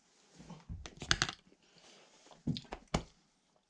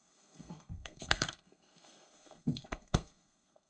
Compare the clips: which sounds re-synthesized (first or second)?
second